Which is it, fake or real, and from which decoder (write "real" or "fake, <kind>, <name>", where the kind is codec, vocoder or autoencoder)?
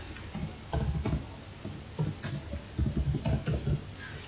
real